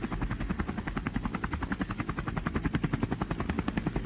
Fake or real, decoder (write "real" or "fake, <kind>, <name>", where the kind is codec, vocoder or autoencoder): real